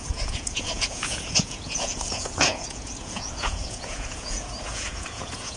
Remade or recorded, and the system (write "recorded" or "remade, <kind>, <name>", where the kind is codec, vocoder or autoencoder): remade, vocoder, Vocos